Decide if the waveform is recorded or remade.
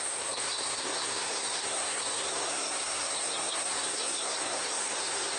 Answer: remade